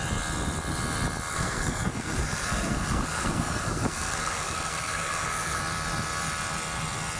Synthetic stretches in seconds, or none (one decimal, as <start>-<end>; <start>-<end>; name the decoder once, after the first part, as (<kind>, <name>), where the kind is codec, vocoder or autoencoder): 1.3-5.6 (codec, SNAC)